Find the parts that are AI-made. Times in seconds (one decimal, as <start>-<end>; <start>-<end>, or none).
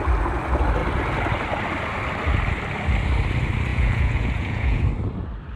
3.7-4.8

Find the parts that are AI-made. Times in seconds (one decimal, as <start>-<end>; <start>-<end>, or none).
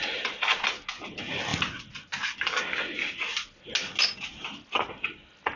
none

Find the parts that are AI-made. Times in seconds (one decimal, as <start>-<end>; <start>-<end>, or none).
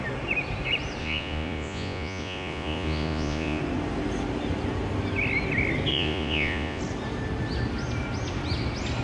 1.0-3.6; 5.9-6.8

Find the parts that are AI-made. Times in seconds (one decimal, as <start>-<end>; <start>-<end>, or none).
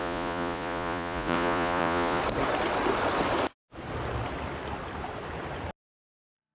0.0-2.2; 6.0-6.5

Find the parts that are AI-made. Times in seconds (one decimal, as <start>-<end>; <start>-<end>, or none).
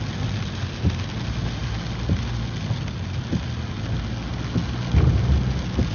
none